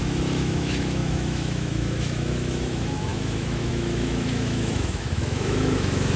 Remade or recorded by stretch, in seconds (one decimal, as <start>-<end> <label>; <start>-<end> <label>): 0.0-6.2 remade

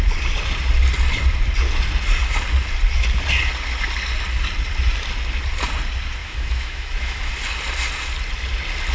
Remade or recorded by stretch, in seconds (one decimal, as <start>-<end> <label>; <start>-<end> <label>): 0.0-6.2 recorded; 6.2-7.3 remade; 7.3-8.9 recorded

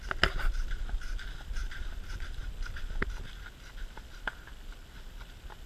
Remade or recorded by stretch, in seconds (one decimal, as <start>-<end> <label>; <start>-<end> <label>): 0.0-5.7 recorded

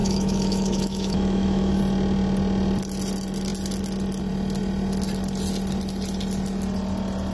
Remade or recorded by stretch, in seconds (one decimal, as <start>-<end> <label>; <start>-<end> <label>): 0.0-1.8 remade; 1.8-7.3 recorded

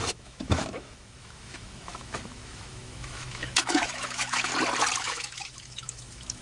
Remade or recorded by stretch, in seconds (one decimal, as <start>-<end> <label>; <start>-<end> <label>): 0.0-4.5 remade; 4.5-5.0 recorded; 5.0-6.4 remade

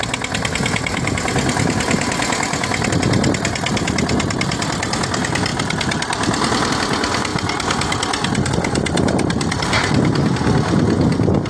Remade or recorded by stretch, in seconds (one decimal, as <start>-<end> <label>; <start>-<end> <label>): 0.0-11.5 recorded

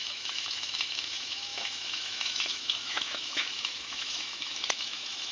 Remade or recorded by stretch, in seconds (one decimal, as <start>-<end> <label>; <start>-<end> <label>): 0.0-5.3 remade